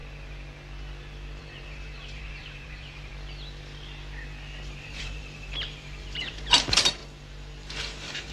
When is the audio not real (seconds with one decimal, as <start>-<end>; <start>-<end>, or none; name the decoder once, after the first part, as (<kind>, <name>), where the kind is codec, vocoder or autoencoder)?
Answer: 1.4-3.1 (vocoder, BigVGAN v2); 5.0-7.0; 7.8-8.3